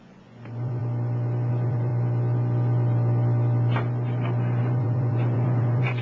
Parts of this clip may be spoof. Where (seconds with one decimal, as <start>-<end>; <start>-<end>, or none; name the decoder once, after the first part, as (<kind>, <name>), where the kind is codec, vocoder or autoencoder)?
0.0-0.8 (vocoder, Vocos); 1.5-1.9; 4.6-6.0